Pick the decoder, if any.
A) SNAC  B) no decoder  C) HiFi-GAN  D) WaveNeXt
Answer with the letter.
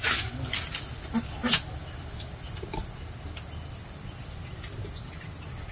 B